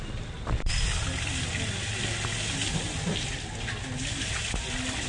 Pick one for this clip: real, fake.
real